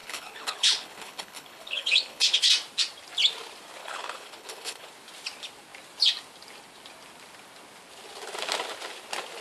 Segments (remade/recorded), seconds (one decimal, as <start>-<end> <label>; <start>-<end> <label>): 0.0-2.5 remade; 2.5-3.8 recorded; 3.8-4.9 remade; 4.9-9.4 recorded

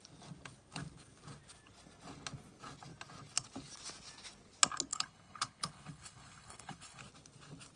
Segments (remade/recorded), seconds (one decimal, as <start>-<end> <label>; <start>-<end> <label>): 0.0-4.9 recorded; 4.9-7.0 remade; 7.0-7.8 recorded

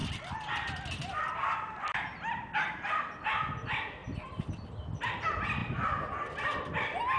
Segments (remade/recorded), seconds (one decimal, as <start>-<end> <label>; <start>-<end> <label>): 0.0-7.2 recorded

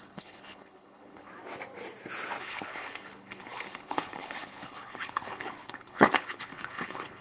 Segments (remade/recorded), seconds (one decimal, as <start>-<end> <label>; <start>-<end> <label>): 0.0-1.3 remade; 1.3-2.4 recorded; 2.4-7.2 remade